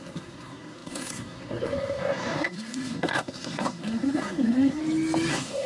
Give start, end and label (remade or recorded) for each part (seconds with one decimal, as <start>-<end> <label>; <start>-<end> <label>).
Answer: 0.0-4.8 remade; 4.8-5.3 recorded; 5.3-5.7 remade